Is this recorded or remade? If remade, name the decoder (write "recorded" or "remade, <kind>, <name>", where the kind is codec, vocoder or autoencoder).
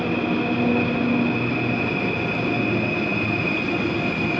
recorded